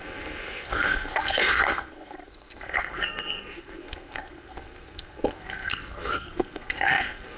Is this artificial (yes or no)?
yes